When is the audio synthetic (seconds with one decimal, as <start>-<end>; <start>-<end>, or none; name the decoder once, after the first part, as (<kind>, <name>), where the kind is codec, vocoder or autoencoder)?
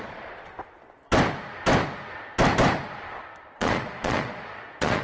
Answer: 0.0-0.5 (vocoder, Vocos); 3.5-5.0